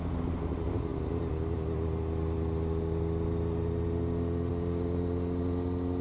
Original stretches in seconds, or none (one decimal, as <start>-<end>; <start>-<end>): 0.0-6.0